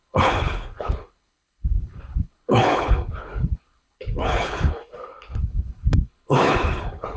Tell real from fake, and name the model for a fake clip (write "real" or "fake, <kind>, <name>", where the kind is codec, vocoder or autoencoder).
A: fake, codec, HILCodec